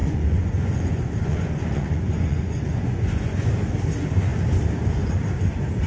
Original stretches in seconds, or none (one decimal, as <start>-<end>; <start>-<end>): 3.5-5.9